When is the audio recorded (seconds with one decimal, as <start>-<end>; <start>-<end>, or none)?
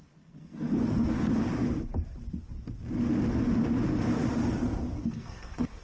1.3-4.8